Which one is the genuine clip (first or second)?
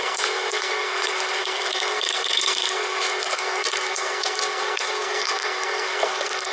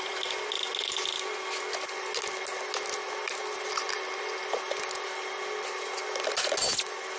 second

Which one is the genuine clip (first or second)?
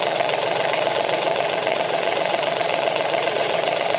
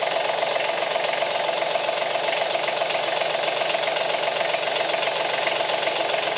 second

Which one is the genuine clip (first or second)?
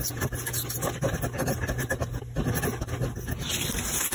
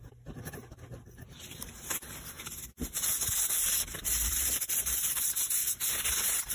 first